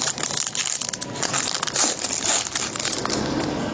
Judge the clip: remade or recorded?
recorded